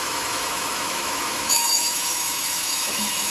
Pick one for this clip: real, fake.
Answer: fake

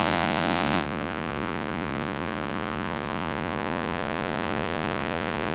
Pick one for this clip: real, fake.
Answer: fake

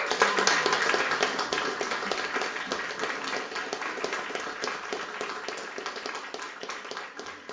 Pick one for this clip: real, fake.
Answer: real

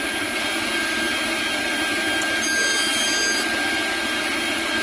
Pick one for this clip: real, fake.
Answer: real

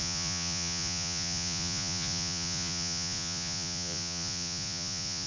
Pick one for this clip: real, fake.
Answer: fake